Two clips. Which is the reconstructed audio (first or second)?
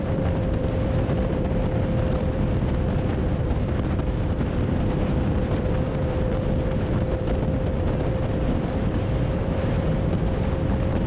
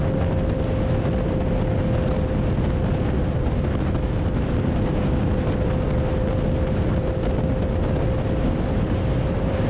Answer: first